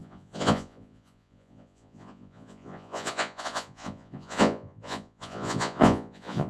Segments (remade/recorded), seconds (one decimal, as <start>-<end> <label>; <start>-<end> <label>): 0.0-6.5 remade